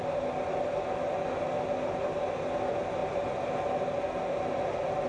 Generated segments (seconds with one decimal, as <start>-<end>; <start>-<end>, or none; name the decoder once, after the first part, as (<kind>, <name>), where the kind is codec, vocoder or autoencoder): none